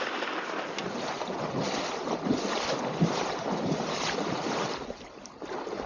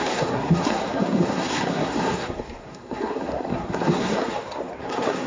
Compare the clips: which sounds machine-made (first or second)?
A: second